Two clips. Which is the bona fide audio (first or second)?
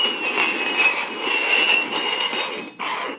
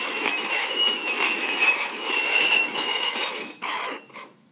first